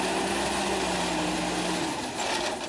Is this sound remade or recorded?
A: recorded